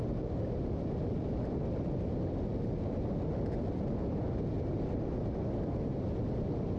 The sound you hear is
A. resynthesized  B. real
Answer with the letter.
B